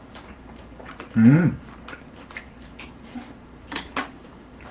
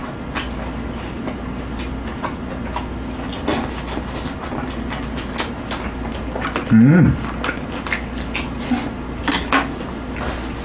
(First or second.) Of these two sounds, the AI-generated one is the first